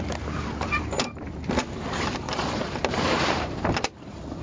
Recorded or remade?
recorded